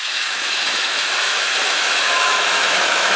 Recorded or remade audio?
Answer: remade